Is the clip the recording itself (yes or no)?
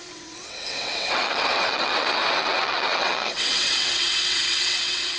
no